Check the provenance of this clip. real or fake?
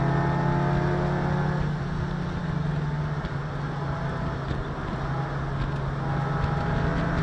real